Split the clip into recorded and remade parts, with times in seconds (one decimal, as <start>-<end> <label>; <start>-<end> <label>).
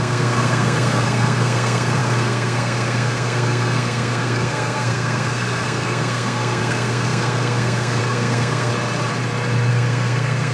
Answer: 0.0-8.7 remade; 8.7-9.7 recorded; 9.7-10.5 remade